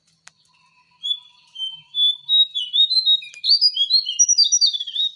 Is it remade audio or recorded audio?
recorded